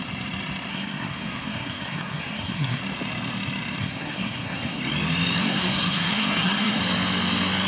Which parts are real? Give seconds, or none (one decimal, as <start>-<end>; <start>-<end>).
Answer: 0.0-0.7; 2.8-3.8; 4.8-5.4; 6.8-7.7